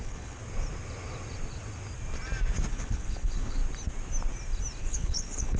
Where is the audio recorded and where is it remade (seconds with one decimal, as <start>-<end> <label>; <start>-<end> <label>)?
0.0-0.4 remade; 0.4-2.7 recorded; 2.7-3.6 remade; 3.6-4.8 recorded; 4.8-5.6 remade